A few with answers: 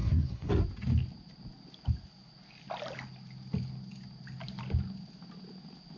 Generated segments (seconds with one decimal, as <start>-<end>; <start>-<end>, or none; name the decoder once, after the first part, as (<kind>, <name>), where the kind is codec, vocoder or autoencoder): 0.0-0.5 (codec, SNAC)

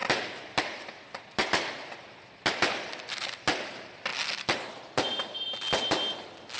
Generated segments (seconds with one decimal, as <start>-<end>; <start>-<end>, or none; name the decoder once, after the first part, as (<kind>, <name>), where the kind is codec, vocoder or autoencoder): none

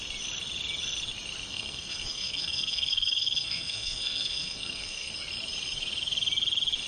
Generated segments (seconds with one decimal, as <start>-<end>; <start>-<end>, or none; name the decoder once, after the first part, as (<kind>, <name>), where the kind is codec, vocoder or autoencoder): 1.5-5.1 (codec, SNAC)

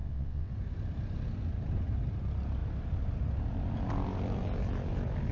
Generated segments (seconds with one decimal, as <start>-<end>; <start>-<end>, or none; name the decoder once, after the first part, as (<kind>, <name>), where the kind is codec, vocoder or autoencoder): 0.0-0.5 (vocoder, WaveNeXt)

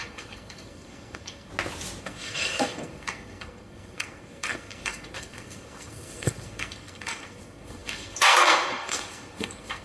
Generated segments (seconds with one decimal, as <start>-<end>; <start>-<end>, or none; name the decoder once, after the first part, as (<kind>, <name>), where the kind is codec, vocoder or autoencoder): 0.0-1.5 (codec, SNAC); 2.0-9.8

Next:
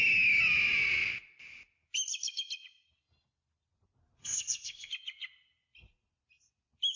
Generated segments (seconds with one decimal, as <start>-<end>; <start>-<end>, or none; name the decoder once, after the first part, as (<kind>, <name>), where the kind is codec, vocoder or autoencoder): 4.2-4.9 (codec, ZipCodec)